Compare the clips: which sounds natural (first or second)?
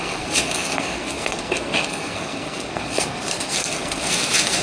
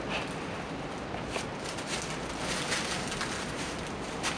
second